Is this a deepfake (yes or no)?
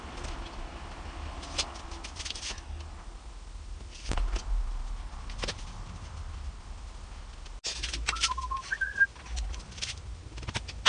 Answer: no